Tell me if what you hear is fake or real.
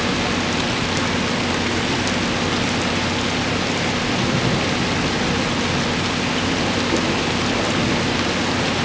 real